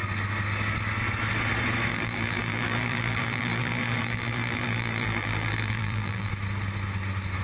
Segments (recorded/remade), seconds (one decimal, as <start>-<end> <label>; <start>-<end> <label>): 0.0-1.9 recorded; 1.9-6.3 remade; 6.3-7.4 recorded